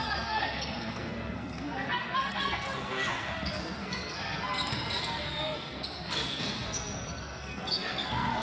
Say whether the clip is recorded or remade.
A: remade